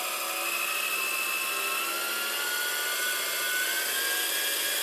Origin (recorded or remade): recorded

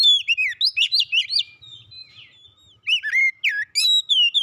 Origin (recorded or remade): recorded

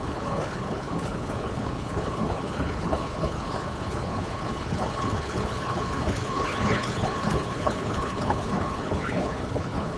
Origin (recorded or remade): remade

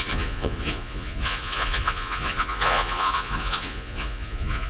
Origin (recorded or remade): remade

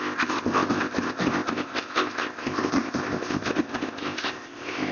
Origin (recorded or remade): remade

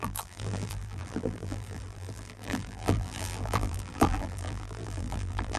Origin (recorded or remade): remade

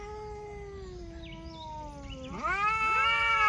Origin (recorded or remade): recorded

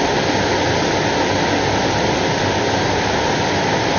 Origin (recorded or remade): recorded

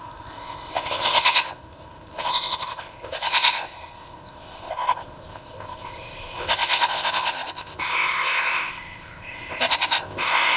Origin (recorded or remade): remade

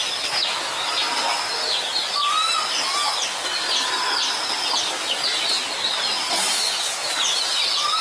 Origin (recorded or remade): recorded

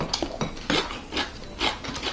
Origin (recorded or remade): recorded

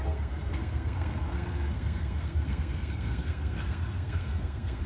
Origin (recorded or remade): remade